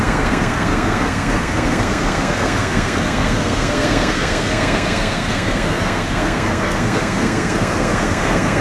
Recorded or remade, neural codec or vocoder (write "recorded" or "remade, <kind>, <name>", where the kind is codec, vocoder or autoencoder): remade, codec, SNAC